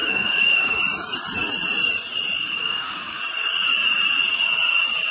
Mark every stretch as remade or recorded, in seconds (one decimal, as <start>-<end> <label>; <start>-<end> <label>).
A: 0.0-0.8 remade; 0.8-2.6 recorded; 2.6-3.2 remade; 3.2-5.1 recorded

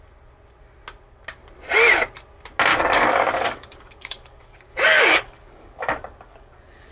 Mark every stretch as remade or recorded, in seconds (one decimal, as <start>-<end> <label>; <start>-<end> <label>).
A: 0.0-2.7 recorded; 2.7-6.9 remade

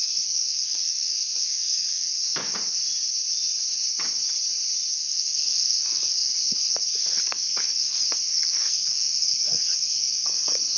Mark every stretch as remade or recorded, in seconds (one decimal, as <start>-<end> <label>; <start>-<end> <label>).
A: 0.0-2.4 remade; 2.4-4.9 recorded; 4.9-10.8 remade

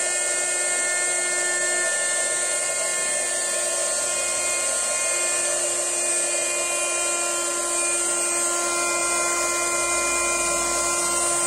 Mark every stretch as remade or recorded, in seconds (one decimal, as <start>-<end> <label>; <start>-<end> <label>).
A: 0.0-11.5 recorded

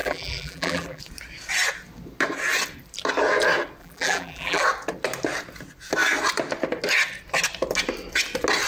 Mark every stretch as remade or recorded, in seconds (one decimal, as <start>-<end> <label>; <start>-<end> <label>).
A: 0.0-1.0 remade; 1.0-3.8 recorded; 3.8-4.6 remade; 4.6-8.7 recorded

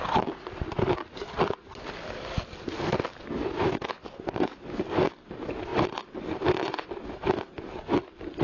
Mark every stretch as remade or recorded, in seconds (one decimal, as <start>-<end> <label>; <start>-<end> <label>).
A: 0.0-8.4 recorded